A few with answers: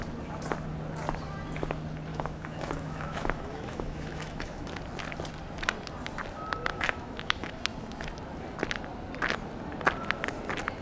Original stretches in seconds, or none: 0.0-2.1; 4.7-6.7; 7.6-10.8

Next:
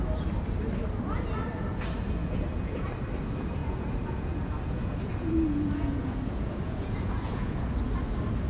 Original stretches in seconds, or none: 0.0-2.2; 2.9-3.6; 7.7-8.5

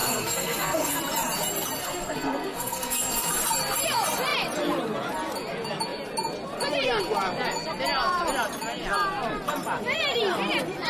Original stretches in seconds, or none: 1.0-1.8; 3.3-10.9

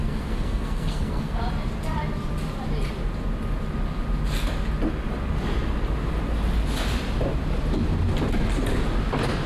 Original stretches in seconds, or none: 1.4-9.5